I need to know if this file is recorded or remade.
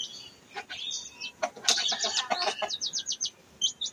recorded